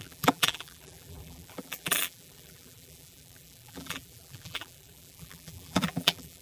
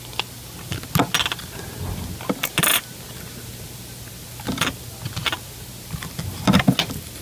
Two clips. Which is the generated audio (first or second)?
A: first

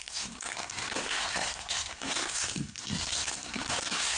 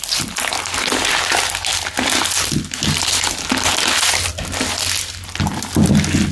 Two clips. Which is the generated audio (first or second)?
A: first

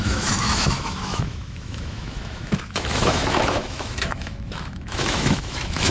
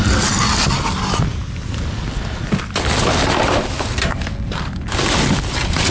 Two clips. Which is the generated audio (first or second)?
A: first